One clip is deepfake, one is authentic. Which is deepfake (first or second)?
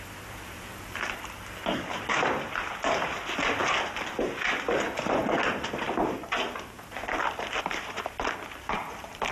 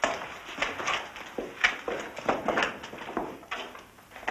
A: first